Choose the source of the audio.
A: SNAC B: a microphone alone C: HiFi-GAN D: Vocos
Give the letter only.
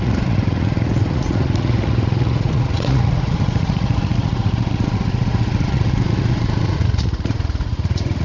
D